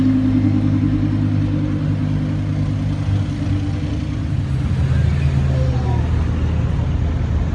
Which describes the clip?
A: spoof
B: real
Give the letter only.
B